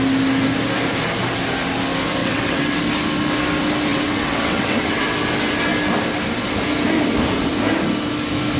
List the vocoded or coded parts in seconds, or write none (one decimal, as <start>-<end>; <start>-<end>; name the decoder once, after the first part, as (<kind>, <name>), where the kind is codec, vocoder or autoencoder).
2.2-2.8 (vocoder, WaveNeXt); 3.9-5.0